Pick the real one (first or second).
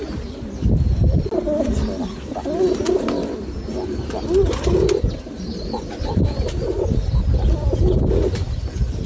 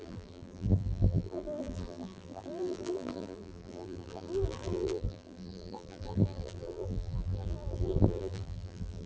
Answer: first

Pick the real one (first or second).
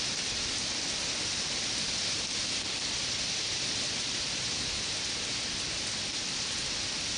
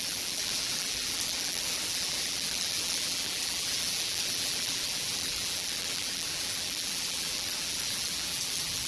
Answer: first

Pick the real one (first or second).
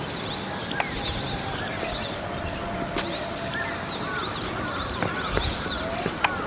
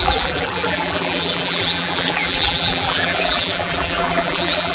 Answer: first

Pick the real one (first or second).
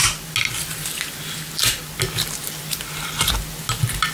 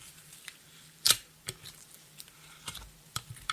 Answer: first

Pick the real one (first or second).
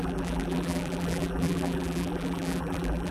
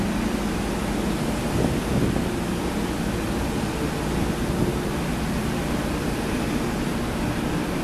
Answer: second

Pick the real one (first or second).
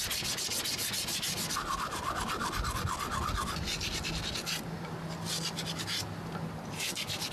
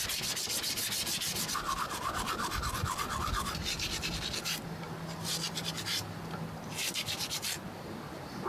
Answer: first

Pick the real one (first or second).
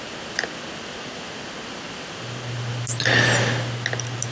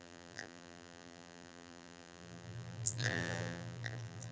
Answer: first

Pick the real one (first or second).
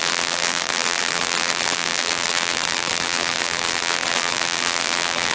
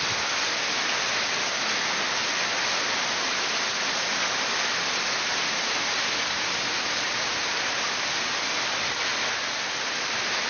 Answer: second